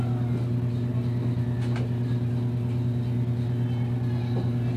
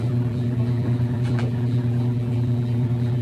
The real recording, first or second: first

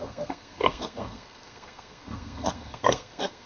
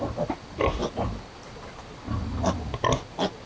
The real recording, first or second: second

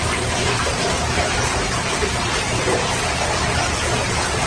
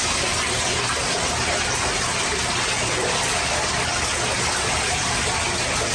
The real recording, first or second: second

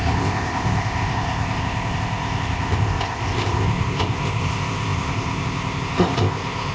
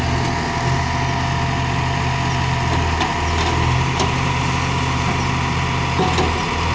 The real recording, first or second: second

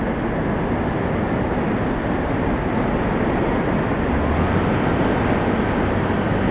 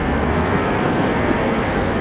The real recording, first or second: first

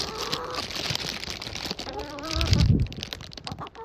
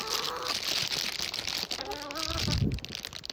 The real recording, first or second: second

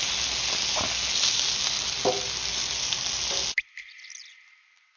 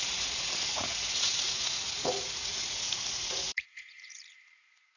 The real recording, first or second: first